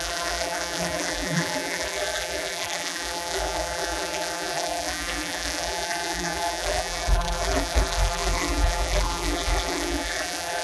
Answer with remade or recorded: remade